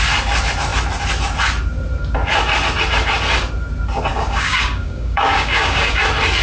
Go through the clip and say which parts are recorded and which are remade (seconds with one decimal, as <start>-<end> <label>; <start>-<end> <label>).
0.0-4.1 recorded; 4.1-6.0 remade; 6.0-6.4 recorded